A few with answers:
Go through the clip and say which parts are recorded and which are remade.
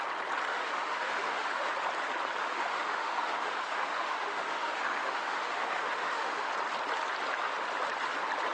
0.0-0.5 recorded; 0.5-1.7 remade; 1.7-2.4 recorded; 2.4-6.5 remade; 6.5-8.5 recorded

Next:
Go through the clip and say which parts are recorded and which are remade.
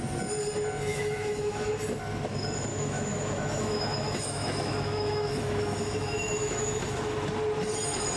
0.0-0.9 recorded; 0.9-1.7 remade; 1.7-2.7 recorded; 2.7-6.8 remade; 6.8-8.2 recorded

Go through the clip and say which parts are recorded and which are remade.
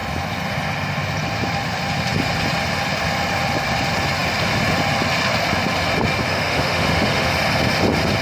0.0-6.3 recorded; 6.3-7.3 remade; 7.3-8.2 recorded